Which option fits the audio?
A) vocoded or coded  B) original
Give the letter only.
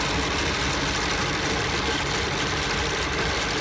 B